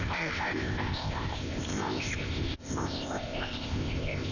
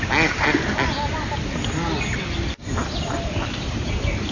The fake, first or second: first